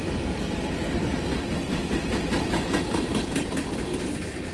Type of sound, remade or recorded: recorded